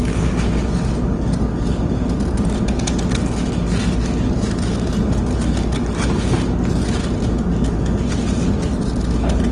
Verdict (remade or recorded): recorded